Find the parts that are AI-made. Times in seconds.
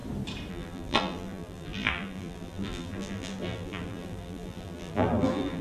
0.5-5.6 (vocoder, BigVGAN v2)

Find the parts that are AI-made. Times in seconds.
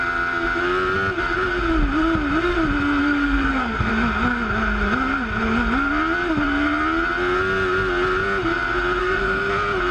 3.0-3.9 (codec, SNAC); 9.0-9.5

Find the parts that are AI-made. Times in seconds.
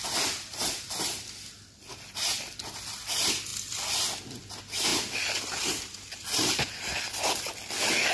1.9-3.0 (vocoder, BigVGAN v2); 4.9-7.6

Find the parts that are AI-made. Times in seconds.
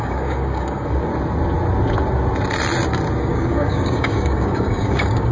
0.0-1.1 (codec, DAC); 3.2-5.3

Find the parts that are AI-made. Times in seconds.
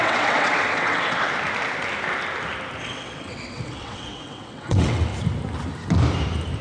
0.0-1.3 (vocoder, WaveNeXt); 2.8-5.1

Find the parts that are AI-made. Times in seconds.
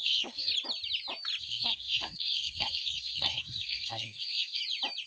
0.0-0.5 (codec, SNAC); 1.4-4.6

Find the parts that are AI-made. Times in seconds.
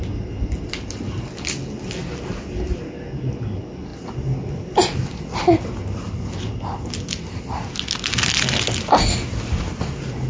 none